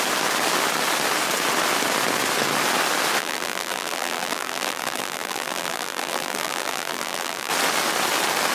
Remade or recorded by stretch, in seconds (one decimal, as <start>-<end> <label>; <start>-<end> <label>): 0.0-3.2 recorded; 3.2-7.5 remade; 7.5-8.5 recorded